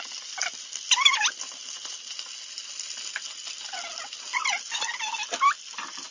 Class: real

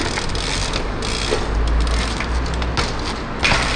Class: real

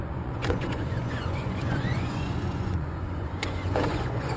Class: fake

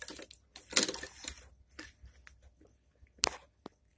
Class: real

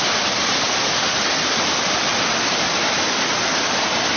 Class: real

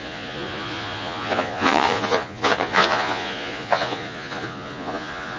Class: fake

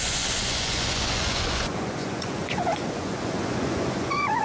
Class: fake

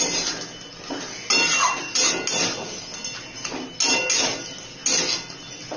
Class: real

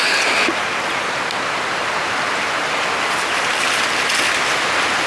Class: real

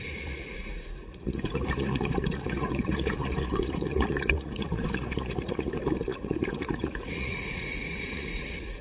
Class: fake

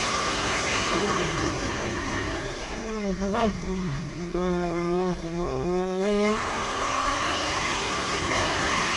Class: fake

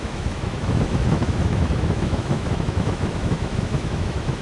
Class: fake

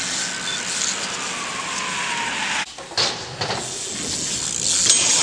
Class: real